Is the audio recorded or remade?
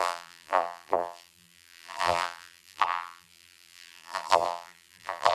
remade